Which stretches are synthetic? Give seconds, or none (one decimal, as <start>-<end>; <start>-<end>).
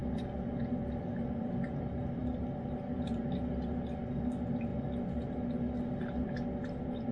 2.2-3.2